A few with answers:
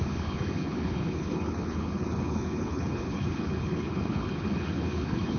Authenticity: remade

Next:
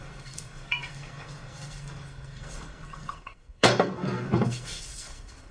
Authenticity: remade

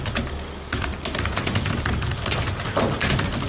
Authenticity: recorded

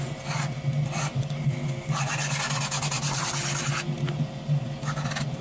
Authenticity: recorded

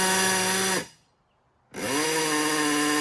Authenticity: recorded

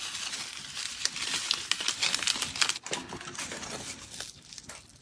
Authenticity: recorded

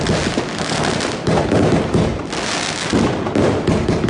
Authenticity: recorded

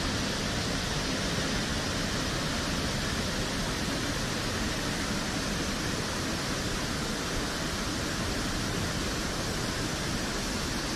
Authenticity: recorded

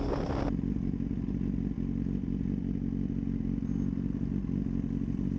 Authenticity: recorded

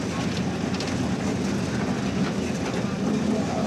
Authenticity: recorded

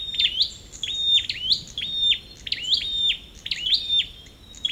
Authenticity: recorded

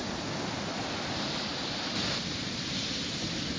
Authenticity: recorded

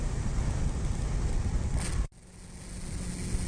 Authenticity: recorded